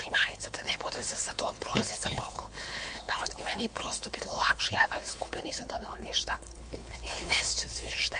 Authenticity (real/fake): fake